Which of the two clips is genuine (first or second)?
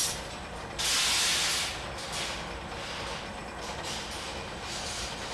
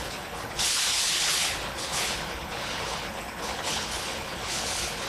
first